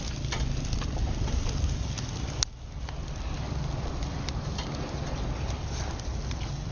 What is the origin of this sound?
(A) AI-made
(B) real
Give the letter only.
B